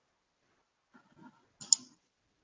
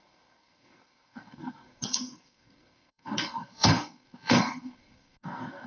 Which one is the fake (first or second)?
second